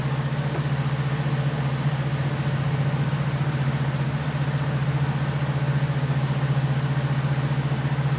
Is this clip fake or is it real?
real